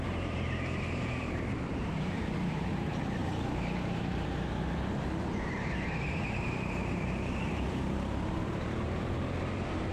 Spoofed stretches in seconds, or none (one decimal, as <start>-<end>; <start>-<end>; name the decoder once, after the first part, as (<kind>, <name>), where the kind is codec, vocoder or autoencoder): 0.0-9.9 (vocoder, BigVGAN v2)